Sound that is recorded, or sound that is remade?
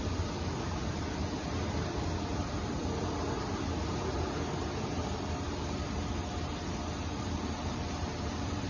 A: remade